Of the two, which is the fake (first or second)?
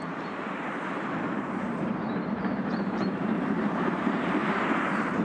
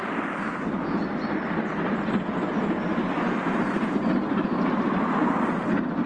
first